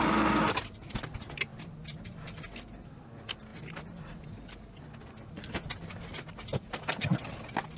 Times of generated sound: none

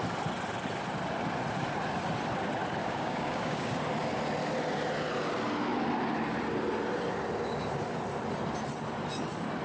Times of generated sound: 2.8-3.8 (codec, DAC)

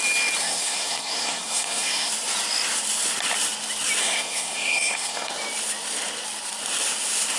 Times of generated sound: 0.4-2.1 (codec, SNAC); 4.0-5.3

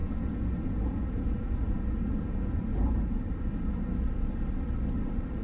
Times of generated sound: 0.0-3.2 (vocoder, Vocos)

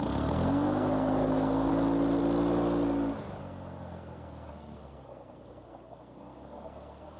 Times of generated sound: 0.0-1.7 (codec, SNAC); 3.4-7.2

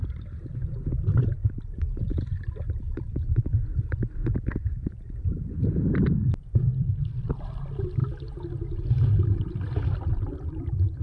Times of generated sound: none